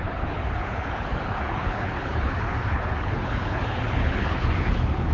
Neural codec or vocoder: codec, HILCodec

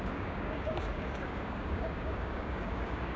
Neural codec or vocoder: codec, DAC